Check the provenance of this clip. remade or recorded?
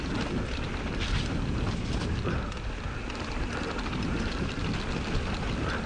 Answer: recorded